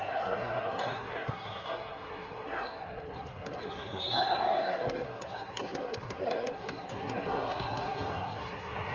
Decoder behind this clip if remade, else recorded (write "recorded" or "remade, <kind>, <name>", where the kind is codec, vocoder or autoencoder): remade, codec, SNAC